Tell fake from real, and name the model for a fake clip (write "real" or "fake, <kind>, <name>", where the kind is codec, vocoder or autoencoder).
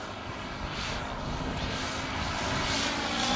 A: real